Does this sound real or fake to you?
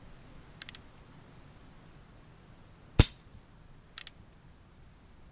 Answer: real